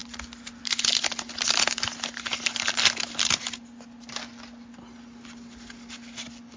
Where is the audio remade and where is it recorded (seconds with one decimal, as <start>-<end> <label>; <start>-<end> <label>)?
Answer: 0.0-6.6 recorded